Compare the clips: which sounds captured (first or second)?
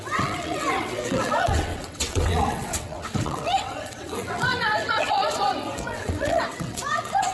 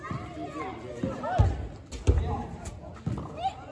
second